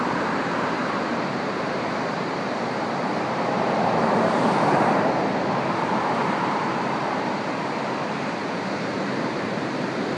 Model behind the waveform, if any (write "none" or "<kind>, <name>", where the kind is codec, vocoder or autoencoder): vocoder, BigVGAN v2